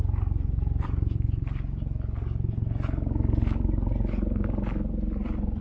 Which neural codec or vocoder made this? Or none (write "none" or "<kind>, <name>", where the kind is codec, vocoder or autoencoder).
vocoder, BigVGAN v2